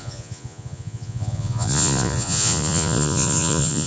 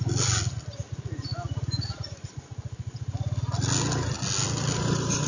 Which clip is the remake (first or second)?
first